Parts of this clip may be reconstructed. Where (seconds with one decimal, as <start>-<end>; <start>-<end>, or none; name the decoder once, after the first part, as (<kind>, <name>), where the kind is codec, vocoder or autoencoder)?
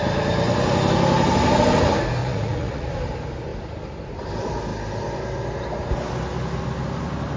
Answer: 2.2-2.9 (vocoder, Vocos)